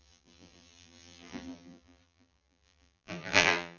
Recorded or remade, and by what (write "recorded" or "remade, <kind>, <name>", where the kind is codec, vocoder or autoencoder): remade, vocoder, BigVGAN v2